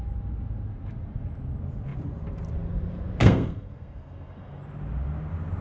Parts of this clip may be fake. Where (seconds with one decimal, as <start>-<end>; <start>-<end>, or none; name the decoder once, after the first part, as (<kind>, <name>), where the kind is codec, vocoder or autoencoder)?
3.2-4.6 (codec, SNAC)